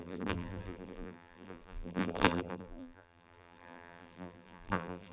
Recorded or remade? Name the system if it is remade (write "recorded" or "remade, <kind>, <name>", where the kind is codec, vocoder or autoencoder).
remade, vocoder, BigVGAN v2